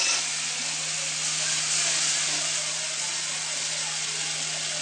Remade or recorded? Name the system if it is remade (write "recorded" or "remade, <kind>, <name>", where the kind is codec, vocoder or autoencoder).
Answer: recorded